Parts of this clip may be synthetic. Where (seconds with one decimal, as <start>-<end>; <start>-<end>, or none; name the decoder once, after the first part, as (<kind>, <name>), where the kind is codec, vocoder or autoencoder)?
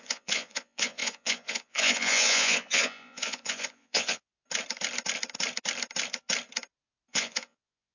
0.0-4.3 (vocoder, Vocos); 7.1-7.9